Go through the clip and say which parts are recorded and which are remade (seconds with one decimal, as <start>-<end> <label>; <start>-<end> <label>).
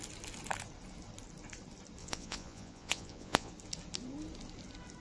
0.0-2.0 recorded; 2.0-3.5 remade; 3.5-5.0 recorded